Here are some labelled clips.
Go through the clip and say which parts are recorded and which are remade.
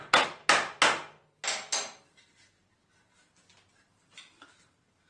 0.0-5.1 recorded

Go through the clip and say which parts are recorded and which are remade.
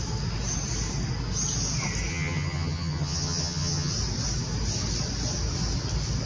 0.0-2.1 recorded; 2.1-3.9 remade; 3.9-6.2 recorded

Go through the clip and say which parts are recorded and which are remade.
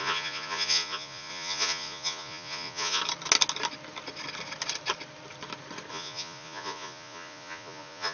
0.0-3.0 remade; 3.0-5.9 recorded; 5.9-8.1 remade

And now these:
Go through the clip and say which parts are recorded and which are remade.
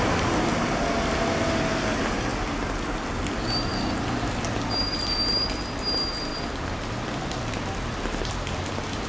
0.0-9.1 recorded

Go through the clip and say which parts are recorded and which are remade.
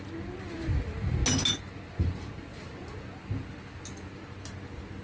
0.0-5.0 recorded